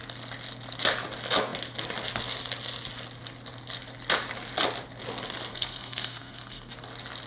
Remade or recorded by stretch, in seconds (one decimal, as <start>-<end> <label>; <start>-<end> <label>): 0.0-5.5 recorded; 5.5-6.7 remade; 6.7-7.3 recorded